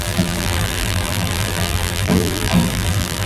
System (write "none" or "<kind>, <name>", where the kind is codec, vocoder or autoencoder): vocoder, BigVGAN v2